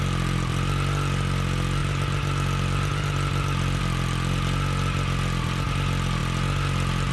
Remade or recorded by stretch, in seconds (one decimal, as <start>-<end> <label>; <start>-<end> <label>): 0.0-7.1 recorded